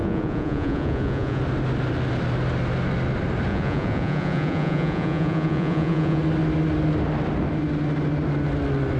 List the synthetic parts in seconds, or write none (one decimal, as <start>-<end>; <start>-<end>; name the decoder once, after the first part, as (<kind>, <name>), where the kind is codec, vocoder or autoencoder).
0.0-1.4 (vocoder, Vocos); 3.5-6.2